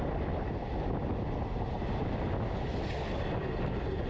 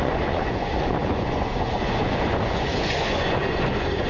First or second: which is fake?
second